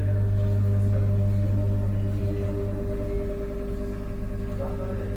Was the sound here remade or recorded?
recorded